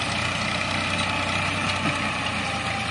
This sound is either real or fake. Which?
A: real